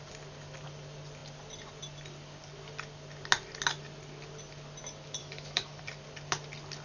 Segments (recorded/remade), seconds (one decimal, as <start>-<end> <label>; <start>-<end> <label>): 0.0-5.2 recorded; 5.2-5.8 remade; 5.8-6.8 recorded